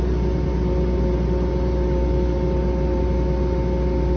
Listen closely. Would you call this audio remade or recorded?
recorded